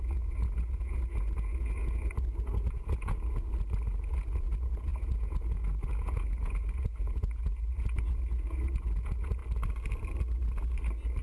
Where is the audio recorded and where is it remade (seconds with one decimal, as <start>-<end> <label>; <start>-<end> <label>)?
0.0-9.4 remade; 9.4-11.2 recorded